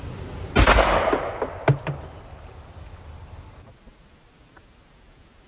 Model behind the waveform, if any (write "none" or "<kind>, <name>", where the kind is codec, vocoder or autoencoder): none